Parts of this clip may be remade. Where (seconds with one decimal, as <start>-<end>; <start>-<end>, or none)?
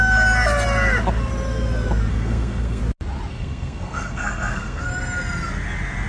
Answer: 2.1-2.8; 3.3-4.8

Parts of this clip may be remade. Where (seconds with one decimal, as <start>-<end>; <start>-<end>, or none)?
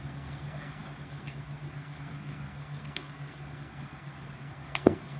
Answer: 0.0-5.2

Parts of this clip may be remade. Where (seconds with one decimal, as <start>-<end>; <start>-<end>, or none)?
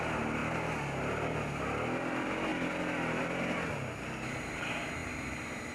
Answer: none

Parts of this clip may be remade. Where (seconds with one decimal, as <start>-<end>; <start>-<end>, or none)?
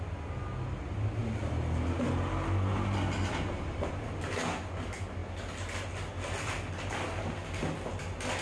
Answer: none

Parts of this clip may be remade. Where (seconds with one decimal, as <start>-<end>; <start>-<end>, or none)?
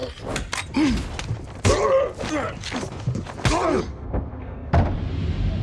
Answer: 3.9-4.7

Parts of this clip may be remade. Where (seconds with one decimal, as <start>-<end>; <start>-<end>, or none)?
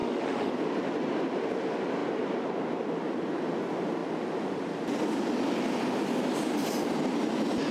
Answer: 0.0-0.5